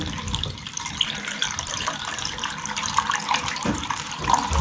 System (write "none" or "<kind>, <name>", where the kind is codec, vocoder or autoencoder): vocoder, BigVGAN v2